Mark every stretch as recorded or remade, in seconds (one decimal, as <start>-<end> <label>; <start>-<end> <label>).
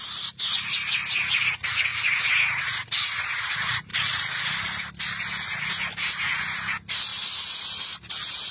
0.0-8.5 recorded